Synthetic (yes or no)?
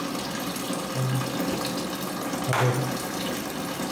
no